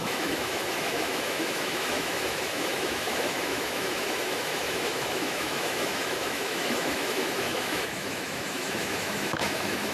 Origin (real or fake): fake